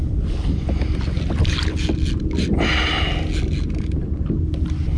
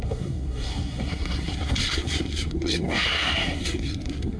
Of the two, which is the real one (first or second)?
first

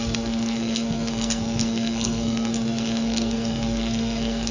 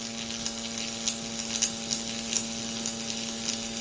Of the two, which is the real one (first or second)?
second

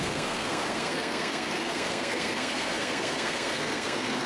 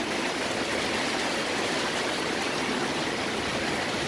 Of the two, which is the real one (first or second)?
second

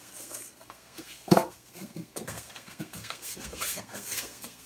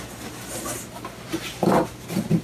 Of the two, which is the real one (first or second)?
second